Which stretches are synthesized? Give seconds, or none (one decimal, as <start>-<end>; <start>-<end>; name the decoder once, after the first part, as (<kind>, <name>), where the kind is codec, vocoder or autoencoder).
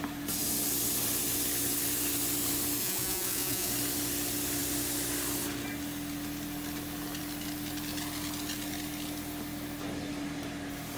2.8-3.7 (vocoder, Vocos)